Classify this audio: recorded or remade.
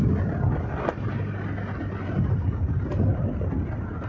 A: recorded